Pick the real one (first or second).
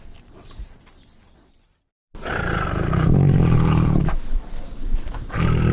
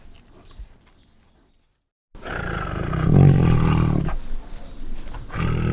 second